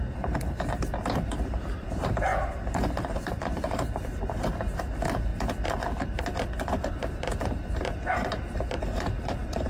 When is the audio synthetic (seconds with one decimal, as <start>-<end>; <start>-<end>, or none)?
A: 0.0-5.3; 7.0-9.7